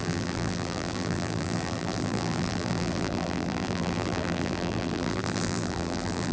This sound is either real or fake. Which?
fake